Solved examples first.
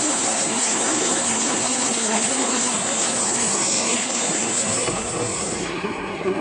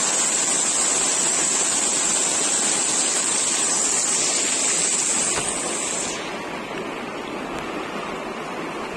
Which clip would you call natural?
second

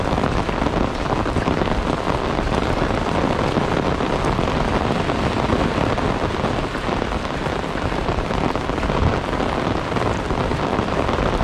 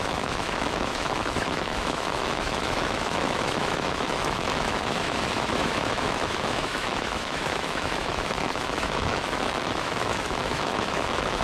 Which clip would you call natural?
first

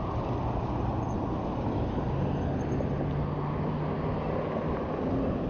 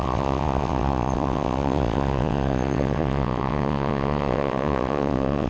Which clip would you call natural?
first